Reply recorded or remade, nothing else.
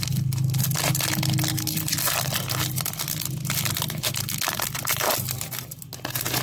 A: recorded